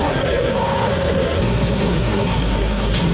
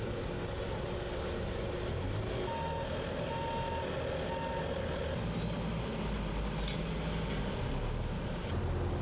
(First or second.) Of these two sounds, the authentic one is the second